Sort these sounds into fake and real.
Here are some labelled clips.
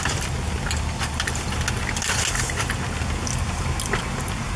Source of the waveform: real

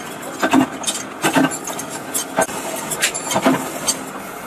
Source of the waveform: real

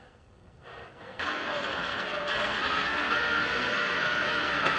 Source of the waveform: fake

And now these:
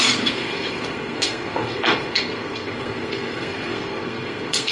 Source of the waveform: fake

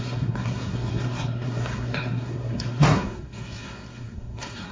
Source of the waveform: fake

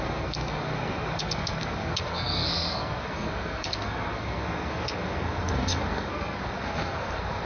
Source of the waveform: fake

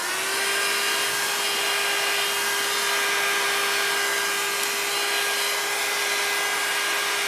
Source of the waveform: real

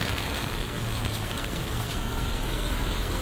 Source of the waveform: fake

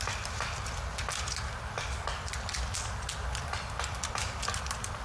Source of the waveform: real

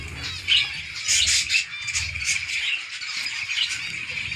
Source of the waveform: real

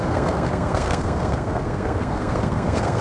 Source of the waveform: fake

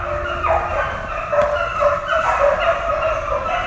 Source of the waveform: real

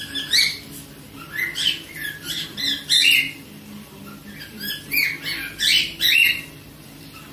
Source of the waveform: real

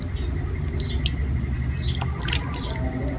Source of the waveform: real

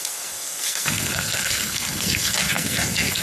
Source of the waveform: fake